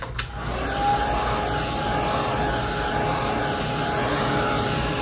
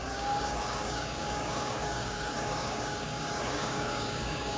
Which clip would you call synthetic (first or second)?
second